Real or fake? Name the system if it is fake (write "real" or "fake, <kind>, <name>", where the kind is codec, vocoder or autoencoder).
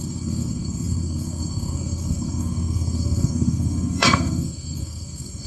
fake, codec, SNAC